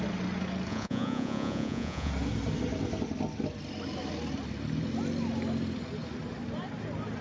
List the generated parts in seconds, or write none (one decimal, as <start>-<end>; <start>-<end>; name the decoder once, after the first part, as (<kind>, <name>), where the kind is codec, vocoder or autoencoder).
0.7-2.1 (vocoder, Vocos)

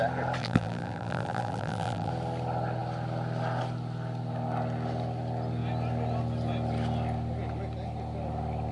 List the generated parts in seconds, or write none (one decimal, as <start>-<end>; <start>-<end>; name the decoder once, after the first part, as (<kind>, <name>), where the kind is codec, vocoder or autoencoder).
0.4-2.1 (vocoder, BigVGAN v2)

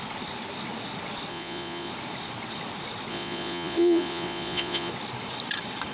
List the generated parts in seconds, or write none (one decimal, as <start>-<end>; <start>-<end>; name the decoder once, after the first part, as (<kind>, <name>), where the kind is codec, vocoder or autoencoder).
1.3-1.9 (vocoder, Vocos); 3.1-4.9

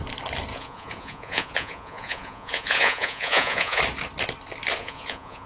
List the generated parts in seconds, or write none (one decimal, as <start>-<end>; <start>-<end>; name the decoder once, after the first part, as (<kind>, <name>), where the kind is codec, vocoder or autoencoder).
0.5-3.8 (vocoder, Vocos); 4.8-5.5

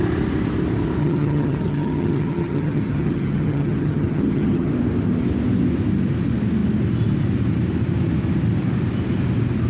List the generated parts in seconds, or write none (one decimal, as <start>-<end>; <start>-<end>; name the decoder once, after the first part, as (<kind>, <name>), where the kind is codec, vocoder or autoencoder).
1.0-4.7 (vocoder, HiFi-GAN)

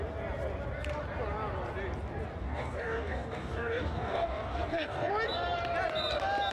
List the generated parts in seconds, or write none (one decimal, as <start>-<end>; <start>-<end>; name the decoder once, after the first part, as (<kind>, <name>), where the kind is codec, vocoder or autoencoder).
2.4-5.1 (codec, DAC)